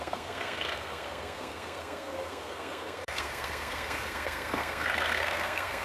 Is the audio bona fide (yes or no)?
no